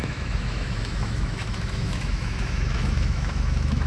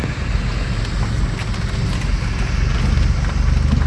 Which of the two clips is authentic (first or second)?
second